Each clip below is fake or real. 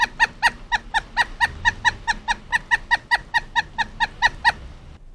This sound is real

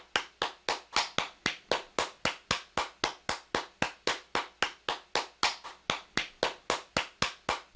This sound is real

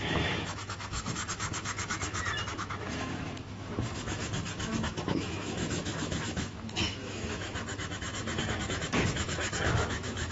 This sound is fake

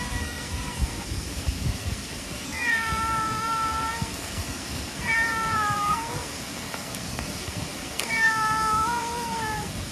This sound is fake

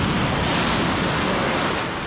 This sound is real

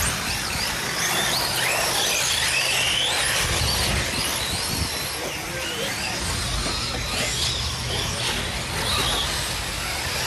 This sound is real